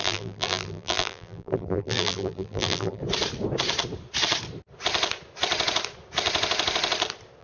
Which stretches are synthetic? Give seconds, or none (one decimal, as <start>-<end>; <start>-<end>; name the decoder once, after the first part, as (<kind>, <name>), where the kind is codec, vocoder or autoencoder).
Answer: 0.0-3.0 (vocoder, BigVGAN v2)